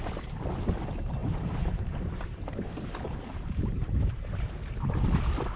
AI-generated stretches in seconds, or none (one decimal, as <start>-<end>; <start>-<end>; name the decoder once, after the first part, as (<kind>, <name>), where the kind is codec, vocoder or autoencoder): 1.2-4.6 (vocoder, BigVGAN v2)